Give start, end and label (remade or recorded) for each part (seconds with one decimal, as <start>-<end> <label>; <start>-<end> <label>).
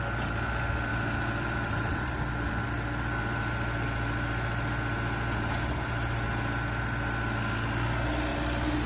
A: 0.0-0.9 recorded; 0.9-2.5 remade; 2.5-8.3 recorded; 8.3-8.9 remade